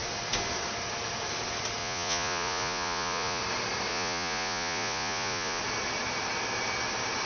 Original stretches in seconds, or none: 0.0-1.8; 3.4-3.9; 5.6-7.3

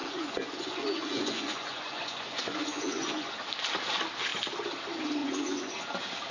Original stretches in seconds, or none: 3.3-5.2; 5.8-6.3

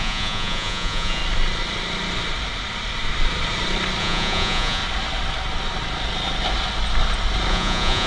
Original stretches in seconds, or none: 1.2-4.0; 4.8-7.5

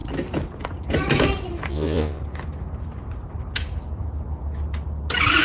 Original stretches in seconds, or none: 0.0-1.7; 2.2-5.4

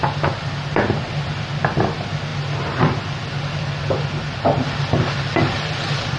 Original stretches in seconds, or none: 0.0-6.2

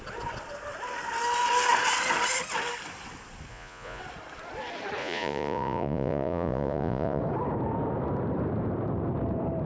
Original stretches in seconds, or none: 0.0-3.5; 4.0-5.0; 7.2-9.7

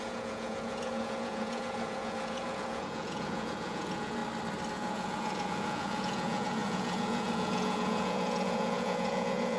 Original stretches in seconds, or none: 4.2-4.7

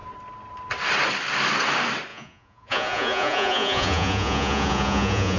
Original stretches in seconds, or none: 0.0-2.1